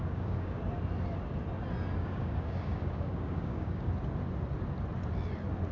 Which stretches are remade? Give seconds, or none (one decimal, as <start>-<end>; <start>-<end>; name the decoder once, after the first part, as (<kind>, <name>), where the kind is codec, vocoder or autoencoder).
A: 0.0-0.6 (codec, DAC); 2.0-3.9